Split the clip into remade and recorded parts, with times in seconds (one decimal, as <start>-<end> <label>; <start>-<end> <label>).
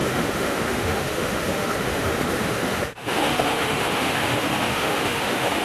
0.0-5.6 remade